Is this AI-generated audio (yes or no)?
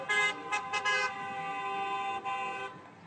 no